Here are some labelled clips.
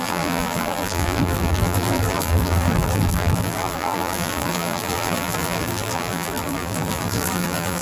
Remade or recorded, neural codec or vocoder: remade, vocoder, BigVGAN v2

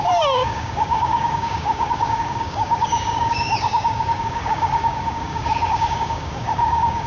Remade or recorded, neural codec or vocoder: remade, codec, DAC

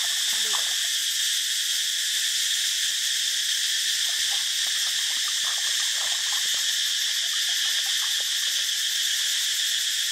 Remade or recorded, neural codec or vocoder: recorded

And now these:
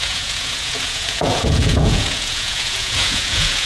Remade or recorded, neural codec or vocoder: remade, vocoder, Vocos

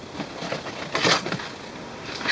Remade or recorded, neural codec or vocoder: recorded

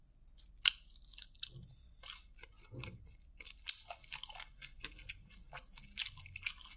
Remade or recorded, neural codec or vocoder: recorded